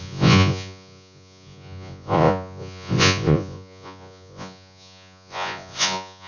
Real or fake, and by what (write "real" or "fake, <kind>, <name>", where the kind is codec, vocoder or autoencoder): fake, vocoder, Vocos